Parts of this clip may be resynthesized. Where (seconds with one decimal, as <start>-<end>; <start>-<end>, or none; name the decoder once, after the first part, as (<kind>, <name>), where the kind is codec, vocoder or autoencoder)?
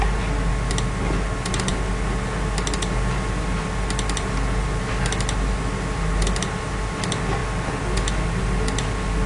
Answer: none